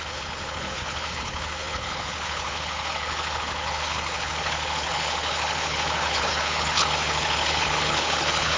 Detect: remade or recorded remade